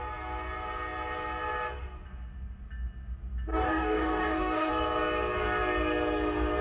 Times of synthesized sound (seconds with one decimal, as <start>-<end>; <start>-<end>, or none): 3.5-4.7